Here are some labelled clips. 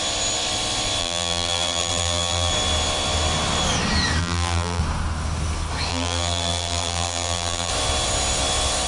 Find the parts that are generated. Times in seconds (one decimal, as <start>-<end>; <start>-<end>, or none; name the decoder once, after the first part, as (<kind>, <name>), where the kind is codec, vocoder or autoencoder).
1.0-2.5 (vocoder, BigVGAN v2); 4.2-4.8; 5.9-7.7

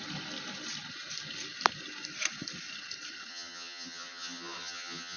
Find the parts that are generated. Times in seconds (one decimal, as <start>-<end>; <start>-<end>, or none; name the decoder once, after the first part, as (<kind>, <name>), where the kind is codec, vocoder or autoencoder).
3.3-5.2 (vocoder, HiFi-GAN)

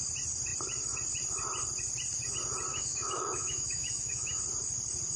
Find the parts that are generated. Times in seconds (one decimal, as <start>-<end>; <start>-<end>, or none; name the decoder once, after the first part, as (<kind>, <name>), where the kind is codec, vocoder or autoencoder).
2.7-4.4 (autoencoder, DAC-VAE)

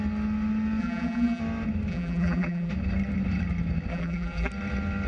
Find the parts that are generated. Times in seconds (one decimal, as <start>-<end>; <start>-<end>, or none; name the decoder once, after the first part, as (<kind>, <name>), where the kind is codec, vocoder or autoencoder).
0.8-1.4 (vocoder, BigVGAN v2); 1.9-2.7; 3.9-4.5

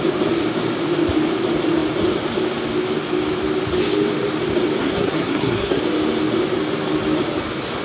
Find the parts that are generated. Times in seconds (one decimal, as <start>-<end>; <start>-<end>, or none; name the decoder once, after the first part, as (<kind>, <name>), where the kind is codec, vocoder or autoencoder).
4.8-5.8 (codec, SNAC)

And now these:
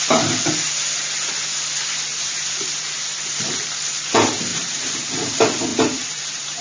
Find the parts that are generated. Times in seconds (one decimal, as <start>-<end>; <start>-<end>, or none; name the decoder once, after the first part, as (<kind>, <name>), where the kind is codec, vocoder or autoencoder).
2.1-3.3 (vocoder, BigVGAN v2); 4.5-5.1; 5.7-6.6